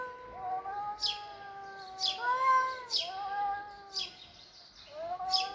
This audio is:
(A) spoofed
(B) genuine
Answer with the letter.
B